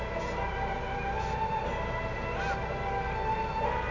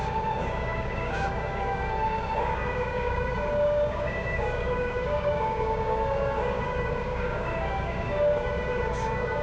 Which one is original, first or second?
first